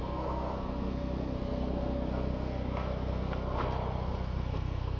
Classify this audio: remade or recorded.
remade